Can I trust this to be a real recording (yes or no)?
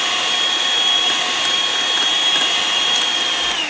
yes